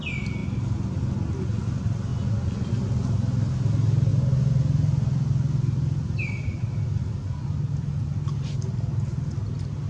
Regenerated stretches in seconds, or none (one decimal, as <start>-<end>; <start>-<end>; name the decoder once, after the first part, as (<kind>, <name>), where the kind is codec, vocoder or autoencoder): none